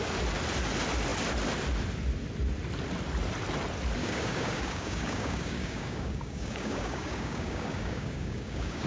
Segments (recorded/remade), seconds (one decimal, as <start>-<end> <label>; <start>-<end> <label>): 0.0-4.0 recorded; 4.0-8.9 remade